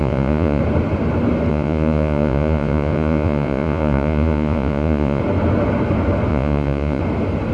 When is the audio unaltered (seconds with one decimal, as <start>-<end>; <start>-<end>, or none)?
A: 0.6-1.5; 5.2-6.3; 7.0-7.5